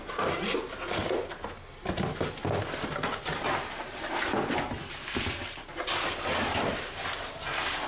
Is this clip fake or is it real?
real